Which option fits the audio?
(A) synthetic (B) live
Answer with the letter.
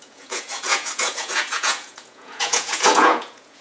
A